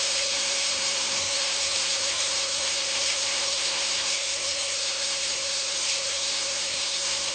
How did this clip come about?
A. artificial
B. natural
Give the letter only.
A